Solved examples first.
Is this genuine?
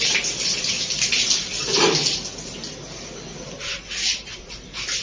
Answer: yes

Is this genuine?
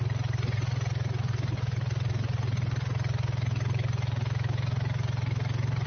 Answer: yes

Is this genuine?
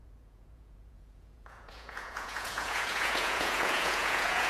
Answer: no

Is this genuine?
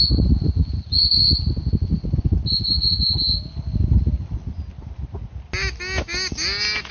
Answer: yes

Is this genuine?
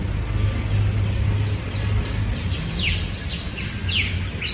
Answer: yes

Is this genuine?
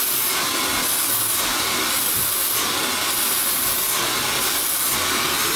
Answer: yes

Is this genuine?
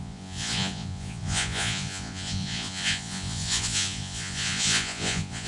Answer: no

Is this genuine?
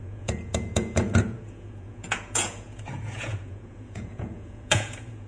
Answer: no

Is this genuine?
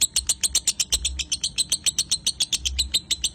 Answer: yes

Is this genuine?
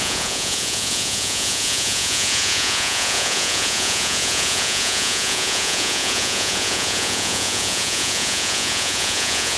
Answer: no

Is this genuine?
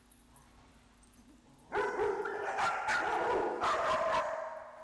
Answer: yes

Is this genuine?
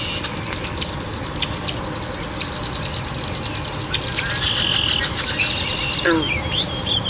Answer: yes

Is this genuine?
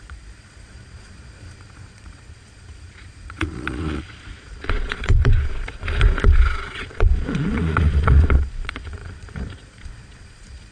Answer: no